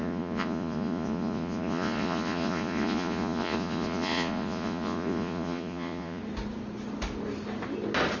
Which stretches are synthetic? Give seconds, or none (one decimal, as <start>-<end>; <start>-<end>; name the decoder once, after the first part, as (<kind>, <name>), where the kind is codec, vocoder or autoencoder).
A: 0.0-6.2 (vocoder, Vocos)